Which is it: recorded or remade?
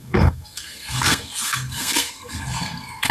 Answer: remade